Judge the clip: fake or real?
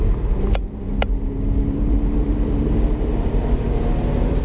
fake